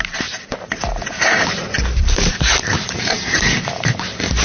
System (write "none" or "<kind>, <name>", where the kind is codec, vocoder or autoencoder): vocoder, BigVGAN v2